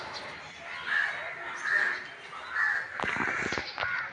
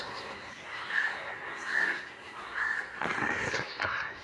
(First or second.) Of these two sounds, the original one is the first